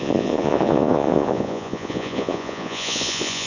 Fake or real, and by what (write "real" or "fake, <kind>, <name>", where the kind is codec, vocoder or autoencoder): fake, vocoder, Vocos